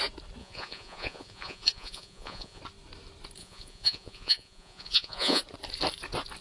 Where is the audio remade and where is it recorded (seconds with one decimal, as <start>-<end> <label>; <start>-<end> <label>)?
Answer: 0.0-0.4 recorded; 0.4-2.6 remade; 2.6-3.4 recorded; 3.4-5.4 remade; 5.4-6.4 recorded